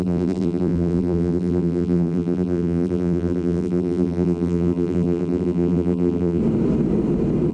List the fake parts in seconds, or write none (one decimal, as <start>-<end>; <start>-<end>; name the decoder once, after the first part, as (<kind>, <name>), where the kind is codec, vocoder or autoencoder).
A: 0.0-6.4 (vocoder, BigVGAN v2)